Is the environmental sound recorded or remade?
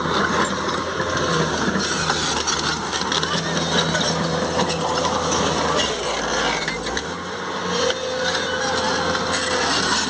recorded